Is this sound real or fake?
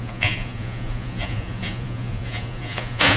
fake